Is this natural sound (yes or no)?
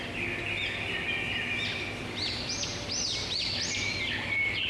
yes